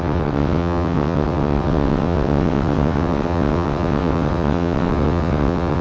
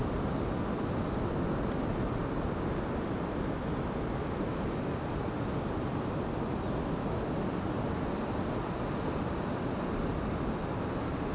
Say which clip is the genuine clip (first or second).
second